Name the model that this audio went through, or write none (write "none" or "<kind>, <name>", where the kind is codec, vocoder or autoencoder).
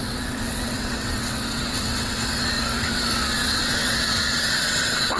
vocoder, WaveNeXt